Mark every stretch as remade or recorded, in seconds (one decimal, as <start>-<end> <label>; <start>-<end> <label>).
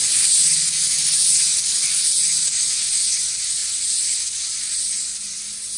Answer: 0.0-1.5 recorded; 1.5-2.2 remade; 2.2-5.8 recorded